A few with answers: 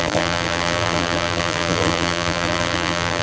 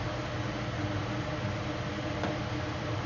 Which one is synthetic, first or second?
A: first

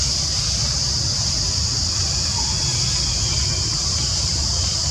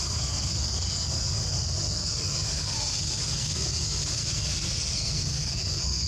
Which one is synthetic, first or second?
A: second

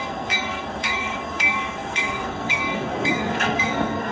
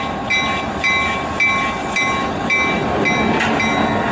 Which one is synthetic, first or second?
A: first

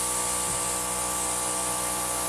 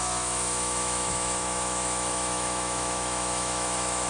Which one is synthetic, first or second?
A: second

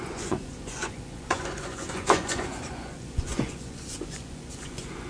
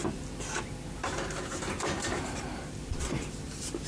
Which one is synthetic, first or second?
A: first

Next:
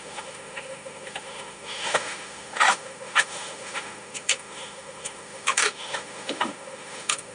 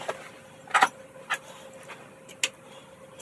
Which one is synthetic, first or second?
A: first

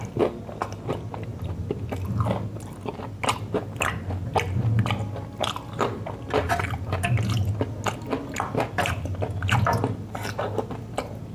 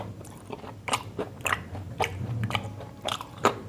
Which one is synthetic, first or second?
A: second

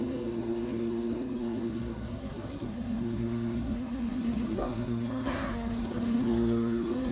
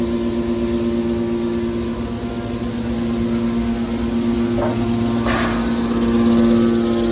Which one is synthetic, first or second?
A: first